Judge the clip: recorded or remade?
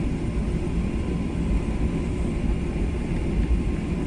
recorded